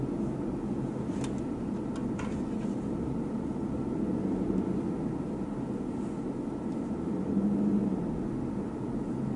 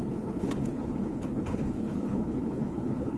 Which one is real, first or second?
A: first